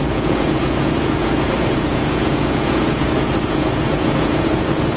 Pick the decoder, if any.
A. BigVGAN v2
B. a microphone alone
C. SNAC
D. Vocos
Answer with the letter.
D